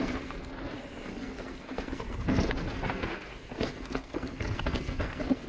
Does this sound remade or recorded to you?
remade